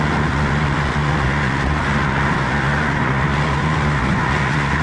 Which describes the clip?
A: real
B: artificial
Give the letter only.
B